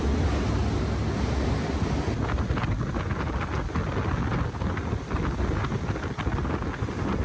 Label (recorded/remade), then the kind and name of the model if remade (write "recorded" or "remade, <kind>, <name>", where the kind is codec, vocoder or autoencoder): recorded